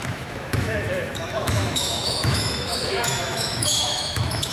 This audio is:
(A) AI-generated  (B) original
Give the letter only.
A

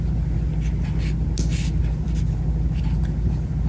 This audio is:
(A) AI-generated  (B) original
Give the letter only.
B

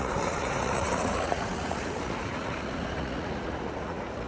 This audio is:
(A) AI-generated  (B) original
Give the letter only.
A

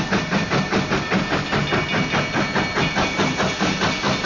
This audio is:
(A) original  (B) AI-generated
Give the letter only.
A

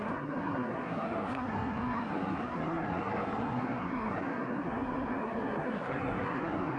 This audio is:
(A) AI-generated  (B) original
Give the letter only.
A